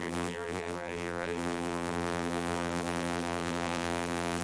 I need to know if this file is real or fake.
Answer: fake